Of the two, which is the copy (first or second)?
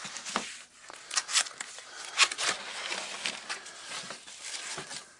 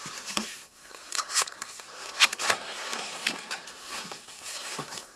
second